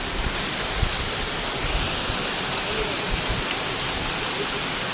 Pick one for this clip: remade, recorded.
recorded